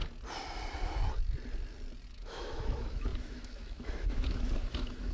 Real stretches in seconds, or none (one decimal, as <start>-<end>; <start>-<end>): 0.0-2.1